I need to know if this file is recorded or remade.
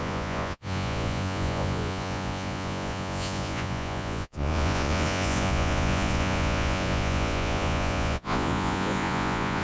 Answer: remade